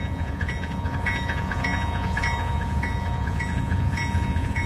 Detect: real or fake fake